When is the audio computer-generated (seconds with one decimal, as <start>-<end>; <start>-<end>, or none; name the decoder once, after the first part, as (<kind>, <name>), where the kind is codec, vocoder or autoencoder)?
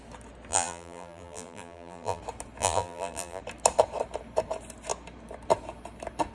0.5-2.2 (vocoder, BigVGAN v2); 2.6-3.4